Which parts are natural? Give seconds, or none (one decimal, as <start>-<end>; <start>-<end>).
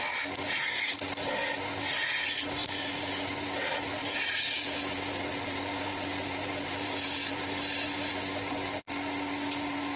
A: 0.0-2.6; 3.1-4.0; 8.1-10.0